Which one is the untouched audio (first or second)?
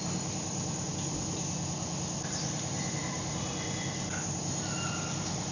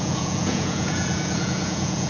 first